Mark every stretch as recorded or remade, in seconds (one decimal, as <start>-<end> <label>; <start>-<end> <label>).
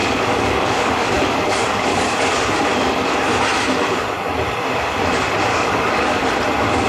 0.0-2.0 remade; 2.0-5.5 recorded; 5.5-6.2 remade; 6.2-6.9 recorded